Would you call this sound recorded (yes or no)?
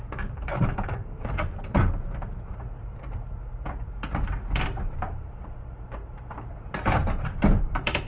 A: no